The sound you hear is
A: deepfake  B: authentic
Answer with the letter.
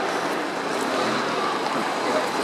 B